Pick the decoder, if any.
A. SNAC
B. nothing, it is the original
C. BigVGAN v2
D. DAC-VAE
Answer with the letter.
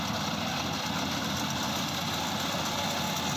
B